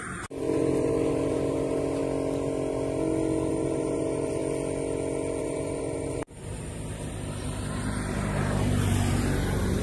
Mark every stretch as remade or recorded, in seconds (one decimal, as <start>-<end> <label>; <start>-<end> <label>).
0.0-2.0 remade; 2.0-3.5 recorded; 3.5-4.4 remade; 4.4-5.4 recorded; 5.4-9.8 remade